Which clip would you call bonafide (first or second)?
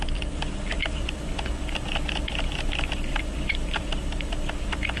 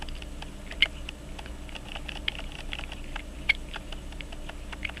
second